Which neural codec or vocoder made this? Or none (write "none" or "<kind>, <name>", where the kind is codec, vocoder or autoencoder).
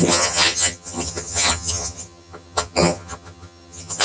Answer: vocoder, HiFi-GAN